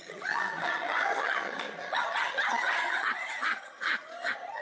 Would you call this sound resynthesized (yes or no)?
yes